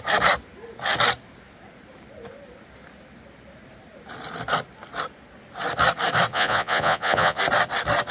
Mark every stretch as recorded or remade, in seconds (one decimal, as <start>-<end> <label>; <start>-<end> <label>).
0.0-6.3 recorded; 6.3-7.4 remade; 7.4-8.1 recorded